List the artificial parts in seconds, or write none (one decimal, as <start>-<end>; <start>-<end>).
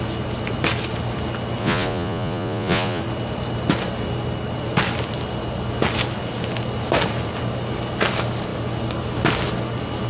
1.6-3.0